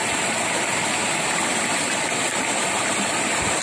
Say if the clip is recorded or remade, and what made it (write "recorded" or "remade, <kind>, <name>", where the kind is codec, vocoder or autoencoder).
recorded